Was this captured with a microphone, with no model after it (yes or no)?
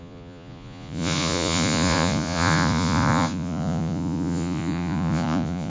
no